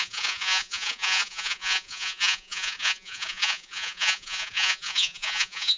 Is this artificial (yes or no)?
yes